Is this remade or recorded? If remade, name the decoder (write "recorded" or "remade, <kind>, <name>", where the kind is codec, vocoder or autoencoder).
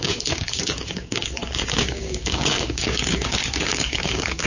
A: remade, codec, DAC